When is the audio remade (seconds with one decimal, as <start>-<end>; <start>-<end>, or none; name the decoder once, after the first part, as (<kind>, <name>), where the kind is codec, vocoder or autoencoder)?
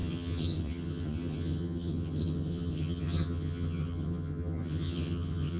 0.0-5.6 (vocoder, HiFi-GAN)